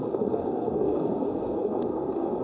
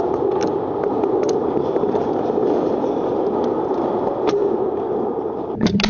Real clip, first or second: second